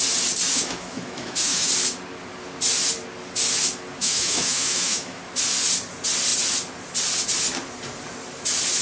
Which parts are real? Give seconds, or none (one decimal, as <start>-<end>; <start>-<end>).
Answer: 0.0-0.5; 1.7-4.0; 5.2-8.8